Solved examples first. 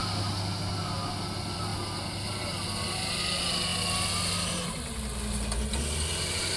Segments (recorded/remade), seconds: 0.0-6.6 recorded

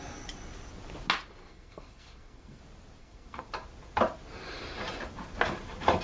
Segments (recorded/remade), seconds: 0.0-1.4 recorded; 1.4-2.6 remade; 2.6-3.0 recorded; 3.0-3.5 remade; 3.5-6.0 recorded

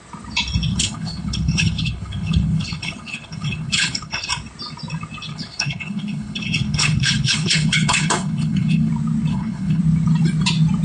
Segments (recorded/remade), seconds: 0.0-0.7 recorded; 0.7-4.3 remade; 4.3-5.3 recorded; 5.3-8.9 remade; 8.9-9.3 recorded; 9.3-9.8 remade; 9.8-10.8 recorded

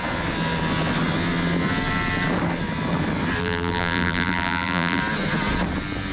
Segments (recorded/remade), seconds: 0.0-3.4 recorded; 3.4-5.0 remade; 5.0-6.1 recorded